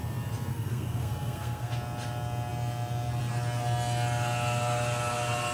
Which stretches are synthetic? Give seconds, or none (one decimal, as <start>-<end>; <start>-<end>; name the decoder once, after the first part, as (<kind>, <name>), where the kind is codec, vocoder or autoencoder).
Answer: 0.5-1.7 (codec, SNAC)